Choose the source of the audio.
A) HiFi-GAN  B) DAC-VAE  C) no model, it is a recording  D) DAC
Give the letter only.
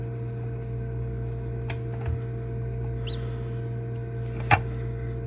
C